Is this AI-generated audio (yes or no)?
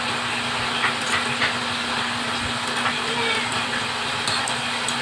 no